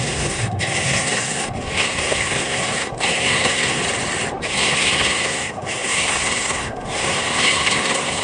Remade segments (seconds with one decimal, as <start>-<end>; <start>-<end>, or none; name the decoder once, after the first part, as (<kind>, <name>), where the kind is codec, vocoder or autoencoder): 0.0-3.8 (codec, SNAC); 4.4-8.2